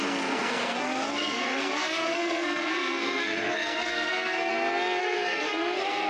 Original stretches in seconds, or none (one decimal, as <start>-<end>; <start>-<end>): 4.5-5.0